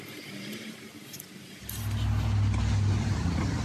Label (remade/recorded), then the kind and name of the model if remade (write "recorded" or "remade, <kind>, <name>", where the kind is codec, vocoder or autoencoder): recorded